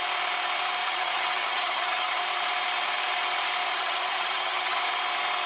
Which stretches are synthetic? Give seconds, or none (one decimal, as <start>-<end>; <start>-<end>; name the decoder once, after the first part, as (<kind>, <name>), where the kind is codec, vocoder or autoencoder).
0.8-2.2 (vocoder, HiFi-GAN); 3.7-4.8